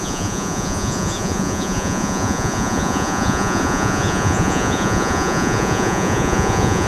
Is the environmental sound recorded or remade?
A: remade